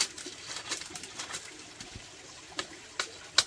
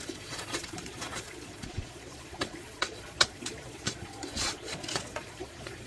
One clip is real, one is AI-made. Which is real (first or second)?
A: first